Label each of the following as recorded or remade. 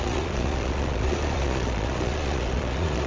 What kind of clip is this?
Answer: remade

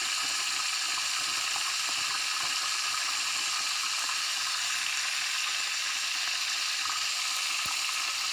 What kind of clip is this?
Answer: recorded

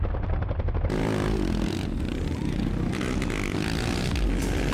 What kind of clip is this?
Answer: recorded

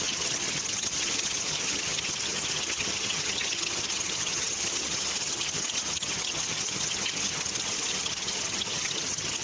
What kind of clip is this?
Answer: remade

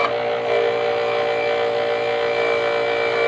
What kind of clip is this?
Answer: recorded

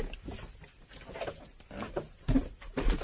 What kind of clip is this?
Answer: recorded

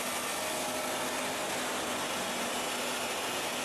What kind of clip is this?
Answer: recorded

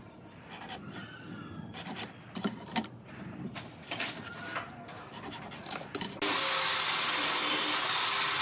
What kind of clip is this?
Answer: recorded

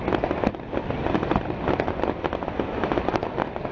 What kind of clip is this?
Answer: recorded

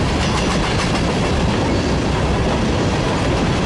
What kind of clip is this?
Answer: recorded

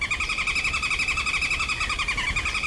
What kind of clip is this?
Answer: recorded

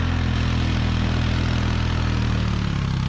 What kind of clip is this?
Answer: recorded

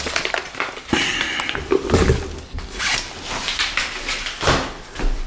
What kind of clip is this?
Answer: recorded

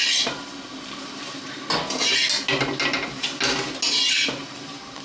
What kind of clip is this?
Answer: recorded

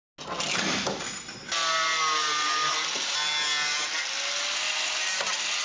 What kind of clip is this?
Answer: recorded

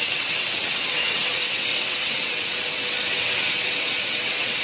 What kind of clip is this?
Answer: remade